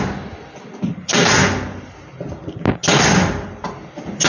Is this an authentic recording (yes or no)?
yes